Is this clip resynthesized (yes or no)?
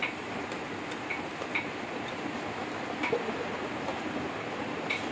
no